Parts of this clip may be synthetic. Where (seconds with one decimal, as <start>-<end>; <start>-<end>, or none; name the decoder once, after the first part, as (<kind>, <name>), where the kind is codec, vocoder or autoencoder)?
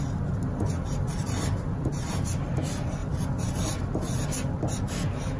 0.7-2.5 (vocoder, BigVGAN v2); 3.0-3.5